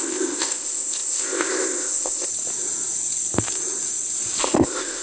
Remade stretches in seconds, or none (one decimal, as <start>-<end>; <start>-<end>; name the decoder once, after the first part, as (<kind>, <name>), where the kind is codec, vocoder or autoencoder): 0.0-2.3 (codec, ZipCodec); 4.4-5.0